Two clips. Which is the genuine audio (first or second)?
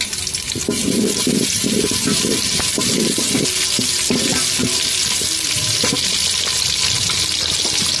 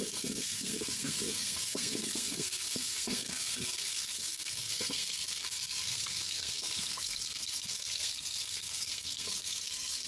first